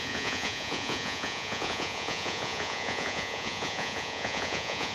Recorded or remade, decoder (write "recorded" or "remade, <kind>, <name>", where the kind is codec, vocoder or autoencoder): remade, vocoder, Vocos